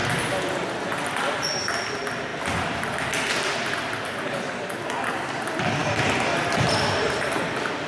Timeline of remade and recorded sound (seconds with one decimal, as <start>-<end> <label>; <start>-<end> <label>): 0.0-7.9 recorded